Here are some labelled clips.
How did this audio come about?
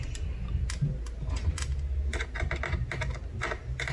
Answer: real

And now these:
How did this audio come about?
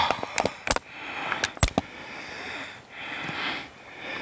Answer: real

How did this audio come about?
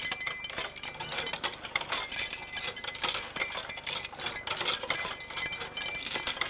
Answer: real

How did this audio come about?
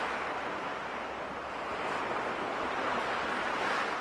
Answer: real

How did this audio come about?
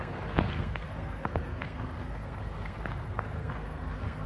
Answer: fake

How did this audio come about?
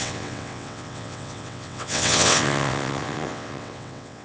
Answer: fake